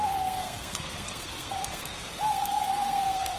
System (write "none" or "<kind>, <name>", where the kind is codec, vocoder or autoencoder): codec, SNAC